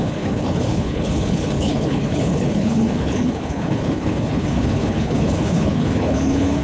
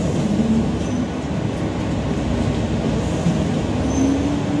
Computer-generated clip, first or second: first